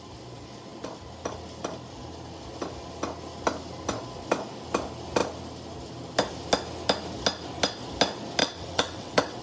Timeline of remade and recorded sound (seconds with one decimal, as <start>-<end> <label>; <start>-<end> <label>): 0.0-8.4 recorded; 8.4-9.4 remade